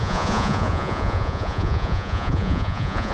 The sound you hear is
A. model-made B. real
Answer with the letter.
A